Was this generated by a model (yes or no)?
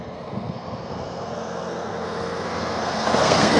yes